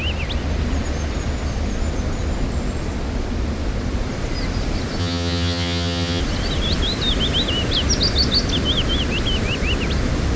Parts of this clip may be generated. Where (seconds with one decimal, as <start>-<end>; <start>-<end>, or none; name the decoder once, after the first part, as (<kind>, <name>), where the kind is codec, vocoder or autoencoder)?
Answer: 5.0-6.2 (vocoder, HiFi-GAN)